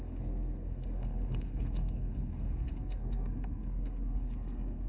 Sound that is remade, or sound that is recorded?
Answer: remade